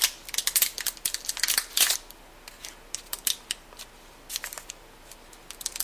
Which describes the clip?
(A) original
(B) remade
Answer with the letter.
A